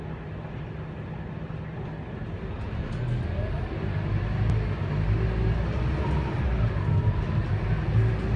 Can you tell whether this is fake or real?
real